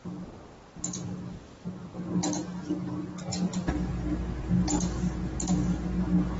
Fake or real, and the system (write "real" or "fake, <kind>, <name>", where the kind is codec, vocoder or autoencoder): real